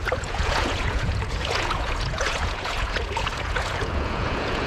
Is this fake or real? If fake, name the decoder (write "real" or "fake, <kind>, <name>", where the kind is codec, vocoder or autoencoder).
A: fake, vocoder, Vocos